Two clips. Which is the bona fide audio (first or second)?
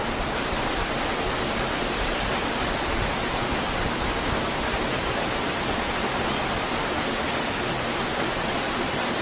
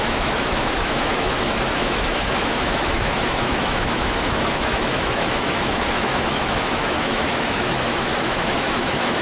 first